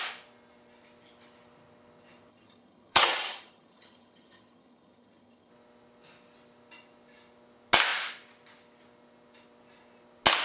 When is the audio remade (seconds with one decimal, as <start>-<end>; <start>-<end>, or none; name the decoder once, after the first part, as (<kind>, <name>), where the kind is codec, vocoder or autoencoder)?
2.3-5.5 (vocoder, HiFi-GAN)